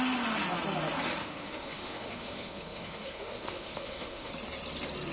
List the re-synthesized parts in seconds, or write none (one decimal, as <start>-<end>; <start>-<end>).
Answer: 1.2-4.3